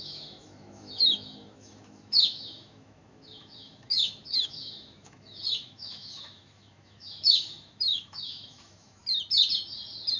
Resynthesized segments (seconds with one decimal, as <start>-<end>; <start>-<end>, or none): 0.0-9.0